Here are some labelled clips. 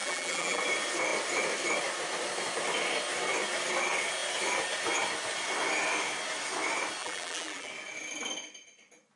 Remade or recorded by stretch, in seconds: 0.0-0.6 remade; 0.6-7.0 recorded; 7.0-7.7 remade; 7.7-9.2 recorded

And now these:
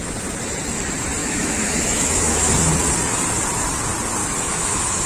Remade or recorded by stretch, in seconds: 0.0-1.2 recorded; 1.2-2.5 remade; 2.5-4.2 recorded; 4.2-5.1 remade

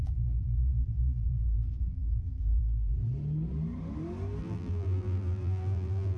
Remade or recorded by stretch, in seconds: 0.0-2.6 remade; 2.6-4.4 recorded; 4.4-6.2 remade

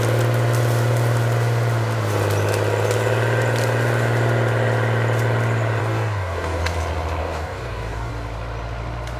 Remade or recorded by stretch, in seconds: 0.0-5.8 recorded; 5.8-6.6 remade; 6.6-7.2 recorded; 7.2-8.1 remade; 8.1-9.2 recorded

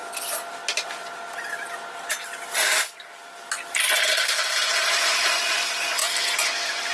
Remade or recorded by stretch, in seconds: 0.0-6.9 recorded

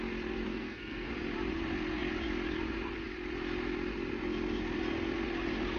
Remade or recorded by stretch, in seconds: 0.0-0.5 recorded; 0.5-1.1 remade; 1.1-5.8 recorded

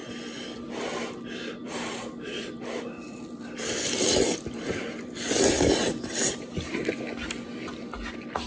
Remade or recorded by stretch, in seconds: 0.0-0.7 remade; 0.7-1.6 recorded; 1.6-6.7 remade; 6.7-8.5 recorded

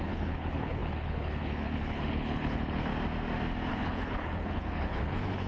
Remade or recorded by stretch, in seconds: 0.0-2.9 remade; 2.9-3.7 recorded; 3.7-5.5 remade